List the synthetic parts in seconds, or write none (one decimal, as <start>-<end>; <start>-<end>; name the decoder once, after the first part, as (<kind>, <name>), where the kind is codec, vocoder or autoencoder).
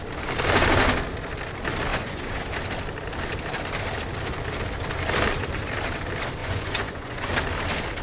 1.9-2.4 (vocoder, Vocos); 6.4-7.3